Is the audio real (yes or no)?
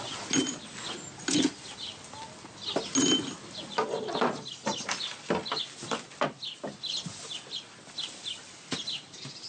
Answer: yes